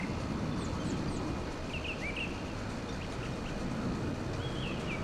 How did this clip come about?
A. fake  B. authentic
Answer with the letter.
B